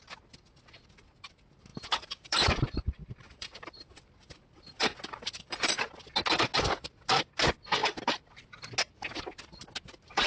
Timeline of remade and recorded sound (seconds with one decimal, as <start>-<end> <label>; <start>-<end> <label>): 0.0-1.7 recorded; 1.7-5.8 remade; 5.8-10.3 recorded